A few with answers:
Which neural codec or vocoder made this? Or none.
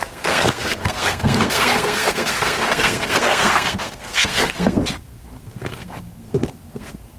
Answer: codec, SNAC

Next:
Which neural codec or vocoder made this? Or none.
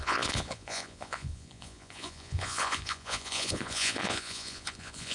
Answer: vocoder, Vocos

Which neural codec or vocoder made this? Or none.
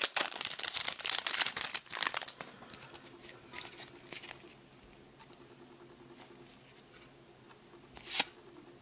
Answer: none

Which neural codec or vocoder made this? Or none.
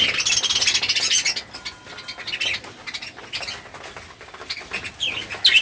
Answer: none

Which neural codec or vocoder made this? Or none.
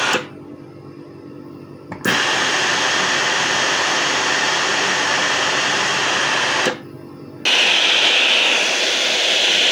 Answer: none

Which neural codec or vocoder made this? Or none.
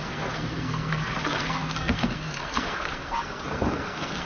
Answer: codec, SNAC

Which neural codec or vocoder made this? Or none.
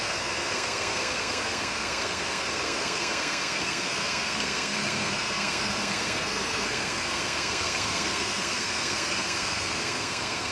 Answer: codec, SNAC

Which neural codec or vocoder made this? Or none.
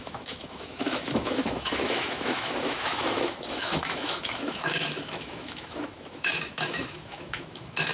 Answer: autoencoder, DAC-VAE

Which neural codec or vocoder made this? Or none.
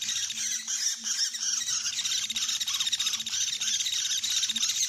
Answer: none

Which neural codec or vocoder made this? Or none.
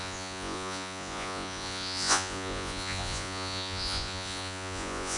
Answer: vocoder, Vocos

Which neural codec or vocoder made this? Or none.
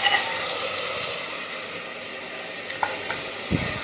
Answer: none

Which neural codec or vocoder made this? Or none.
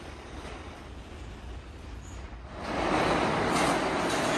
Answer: none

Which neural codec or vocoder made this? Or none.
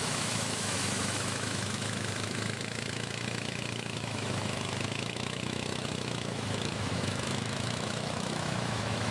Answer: autoencoder, DAC-VAE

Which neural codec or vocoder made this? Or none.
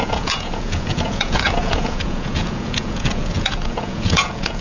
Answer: vocoder, Vocos